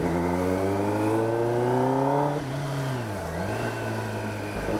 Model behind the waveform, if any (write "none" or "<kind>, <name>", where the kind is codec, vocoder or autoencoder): none